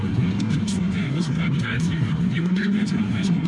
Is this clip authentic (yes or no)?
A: no